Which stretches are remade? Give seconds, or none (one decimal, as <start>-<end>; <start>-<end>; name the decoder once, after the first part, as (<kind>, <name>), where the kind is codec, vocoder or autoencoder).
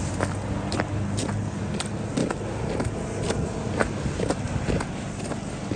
none